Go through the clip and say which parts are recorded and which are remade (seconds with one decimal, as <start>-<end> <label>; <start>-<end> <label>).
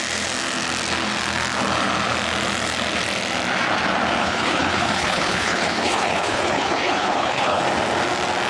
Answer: 0.0-4.2 recorded; 4.2-7.6 remade; 7.6-8.5 recorded